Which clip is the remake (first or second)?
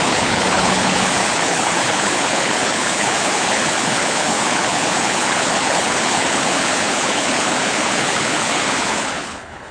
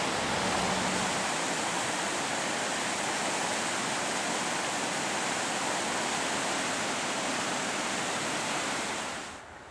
first